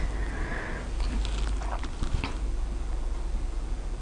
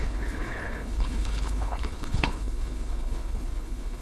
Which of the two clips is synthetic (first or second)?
second